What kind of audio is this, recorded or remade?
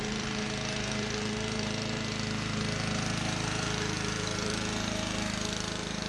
remade